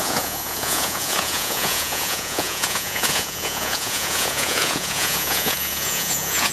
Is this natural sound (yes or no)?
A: no